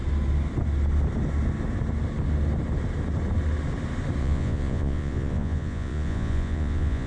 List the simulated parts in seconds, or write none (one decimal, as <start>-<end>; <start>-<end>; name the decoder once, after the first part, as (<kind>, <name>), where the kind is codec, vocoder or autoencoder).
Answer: 4.2-7.1 (vocoder, Vocos)